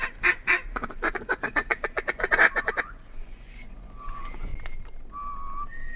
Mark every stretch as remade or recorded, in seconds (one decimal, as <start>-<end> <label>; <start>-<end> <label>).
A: 0.0-4.5 remade; 4.5-6.0 recorded